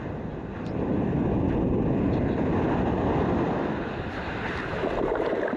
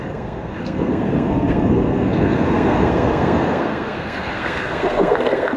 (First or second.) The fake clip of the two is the second